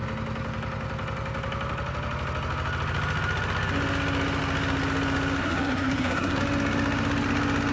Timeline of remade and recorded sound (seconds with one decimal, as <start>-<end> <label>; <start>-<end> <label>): 0.0-5.4 recorded; 5.4-6.4 remade; 6.4-7.7 recorded

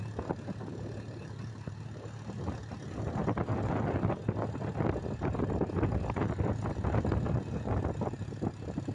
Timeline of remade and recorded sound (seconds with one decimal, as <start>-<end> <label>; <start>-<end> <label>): 0.0-8.9 recorded

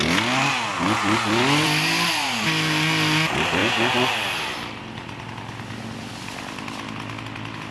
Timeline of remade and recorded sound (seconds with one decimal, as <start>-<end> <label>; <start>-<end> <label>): 0.0-3.6 recorded; 3.6-4.1 remade; 4.1-7.7 recorded

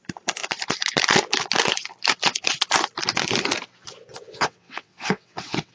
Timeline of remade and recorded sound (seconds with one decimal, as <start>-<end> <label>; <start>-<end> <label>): 0.0-4.1 recorded; 4.1-5.7 remade

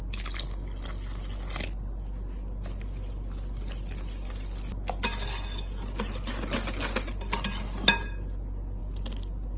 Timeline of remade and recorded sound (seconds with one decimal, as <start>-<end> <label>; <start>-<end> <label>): 0.0-9.6 recorded

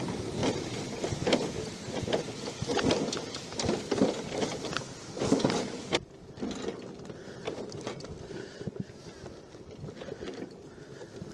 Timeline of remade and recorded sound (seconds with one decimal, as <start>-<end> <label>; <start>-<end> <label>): 0.0-0.4 recorded; 0.4-5.6 remade; 5.6-7.4 recorded; 7.4-9.0 remade; 9.0-11.3 recorded

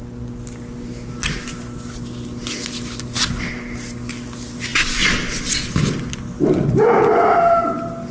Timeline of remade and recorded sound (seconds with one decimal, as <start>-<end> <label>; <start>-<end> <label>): 0.0-8.1 recorded